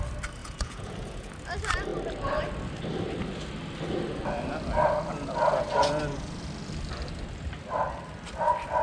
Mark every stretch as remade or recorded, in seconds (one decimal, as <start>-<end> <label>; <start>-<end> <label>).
0.0-0.4 recorded; 0.4-1.3 remade; 1.3-8.8 recorded